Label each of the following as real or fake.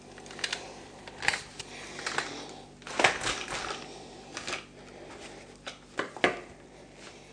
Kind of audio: real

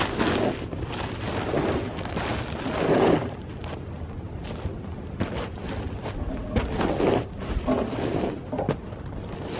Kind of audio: real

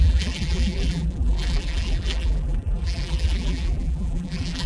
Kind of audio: fake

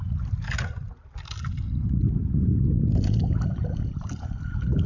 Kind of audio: real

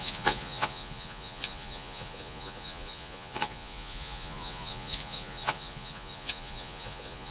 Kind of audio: fake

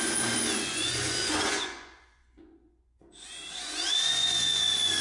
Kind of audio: fake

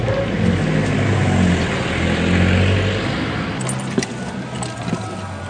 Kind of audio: real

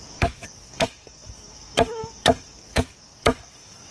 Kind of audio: fake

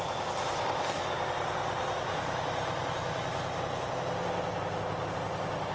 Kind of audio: real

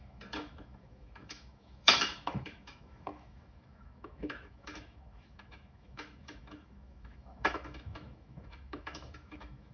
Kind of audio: fake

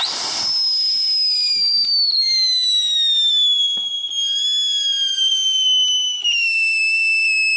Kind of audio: real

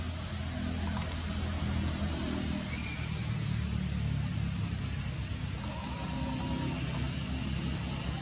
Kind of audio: real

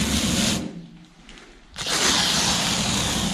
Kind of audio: real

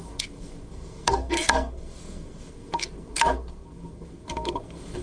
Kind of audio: fake